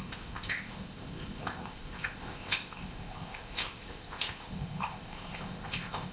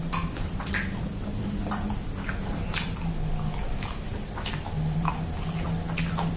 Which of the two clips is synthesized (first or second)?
first